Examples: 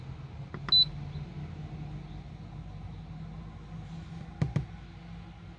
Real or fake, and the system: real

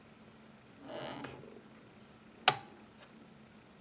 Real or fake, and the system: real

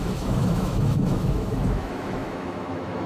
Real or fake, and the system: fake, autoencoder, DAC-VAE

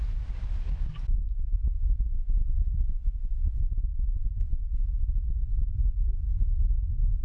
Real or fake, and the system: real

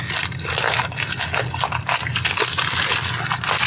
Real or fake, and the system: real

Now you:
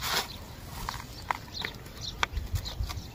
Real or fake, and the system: real